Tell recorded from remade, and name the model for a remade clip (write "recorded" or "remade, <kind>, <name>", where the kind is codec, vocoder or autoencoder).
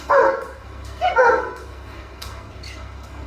remade, codec, SNAC